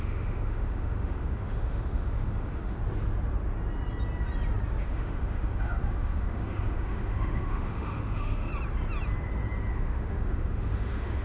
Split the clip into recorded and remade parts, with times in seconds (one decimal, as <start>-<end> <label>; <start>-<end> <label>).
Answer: 0.0-2.8 remade; 2.8-4.8 recorded; 4.8-8.5 remade; 8.5-9.7 recorded; 9.7-11.2 remade

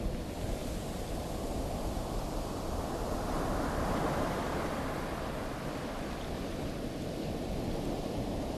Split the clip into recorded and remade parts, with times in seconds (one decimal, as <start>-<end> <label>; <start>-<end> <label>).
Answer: 0.0-8.6 recorded

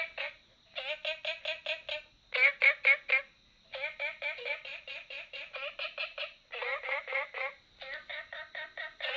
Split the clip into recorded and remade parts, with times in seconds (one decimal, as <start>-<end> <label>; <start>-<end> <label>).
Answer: 0.0-9.2 recorded

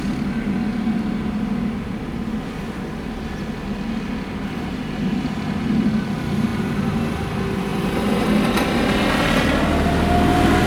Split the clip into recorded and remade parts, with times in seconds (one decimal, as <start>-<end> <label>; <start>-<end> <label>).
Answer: 0.0-10.7 recorded

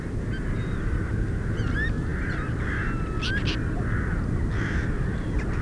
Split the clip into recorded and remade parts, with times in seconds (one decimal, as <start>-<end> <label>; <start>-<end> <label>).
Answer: 0.0-5.6 recorded

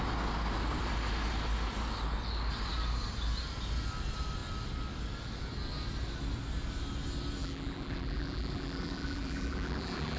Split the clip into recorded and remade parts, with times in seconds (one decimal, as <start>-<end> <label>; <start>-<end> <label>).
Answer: 0.0-7.4 recorded; 7.4-10.2 remade

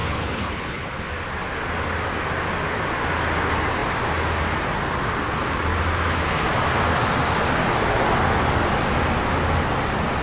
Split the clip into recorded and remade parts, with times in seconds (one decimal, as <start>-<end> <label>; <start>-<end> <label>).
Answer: 0.0-1.0 remade; 1.0-10.2 recorded